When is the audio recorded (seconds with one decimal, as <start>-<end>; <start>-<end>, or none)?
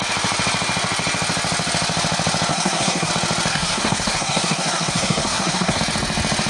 0.0-2.5; 3.1-3.5; 5.8-6.5